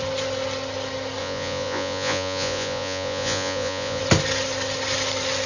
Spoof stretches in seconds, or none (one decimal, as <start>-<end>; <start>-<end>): 1.2-4.0